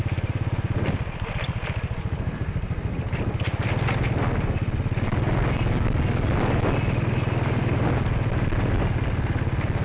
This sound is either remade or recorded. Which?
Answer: recorded